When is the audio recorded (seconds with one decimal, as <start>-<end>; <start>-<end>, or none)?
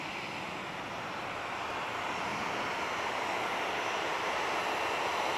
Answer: 0.0-5.4